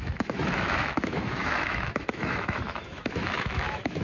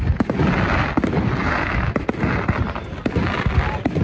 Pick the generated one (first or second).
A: first